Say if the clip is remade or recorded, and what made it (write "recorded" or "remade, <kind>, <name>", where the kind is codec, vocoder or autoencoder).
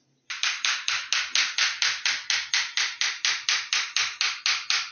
recorded